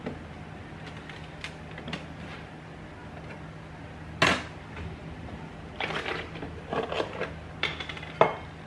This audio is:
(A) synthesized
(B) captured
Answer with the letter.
B